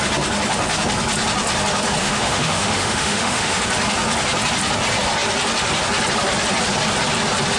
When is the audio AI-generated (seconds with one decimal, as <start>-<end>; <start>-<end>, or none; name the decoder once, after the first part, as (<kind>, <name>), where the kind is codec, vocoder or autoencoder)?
2.0-3.6 (autoencoder, DAC-VAE)